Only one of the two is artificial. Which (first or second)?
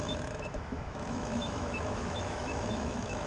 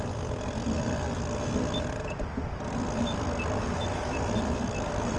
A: first